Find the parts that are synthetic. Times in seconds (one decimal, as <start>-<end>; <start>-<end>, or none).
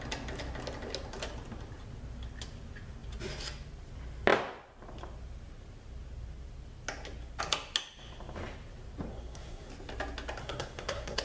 9.1-9.7; 10.4-11.2